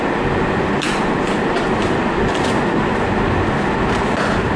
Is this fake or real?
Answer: real